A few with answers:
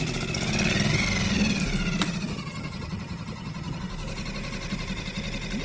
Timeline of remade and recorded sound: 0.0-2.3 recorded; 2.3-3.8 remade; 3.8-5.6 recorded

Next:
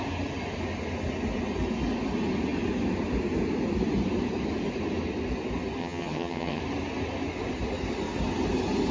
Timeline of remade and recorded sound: 0.0-5.8 recorded; 5.8-6.6 remade; 6.6-8.9 recorded

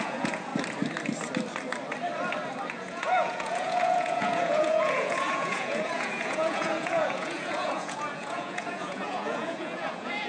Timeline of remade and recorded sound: 0.0-0.5 remade; 0.5-2.7 recorded; 2.7-10.3 remade

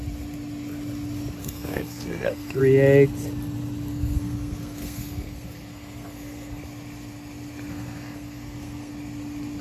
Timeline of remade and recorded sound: 0.0-1.4 recorded; 1.4-2.6 remade; 2.6-3.9 recorded; 3.9-6.6 remade; 6.6-7.7 recorded; 7.7-8.9 remade; 8.9-9.6 recorded